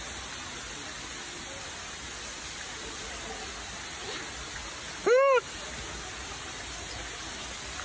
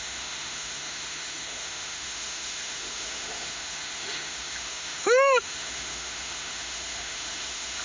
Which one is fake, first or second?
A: second